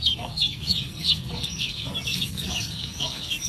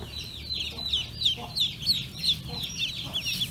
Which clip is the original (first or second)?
second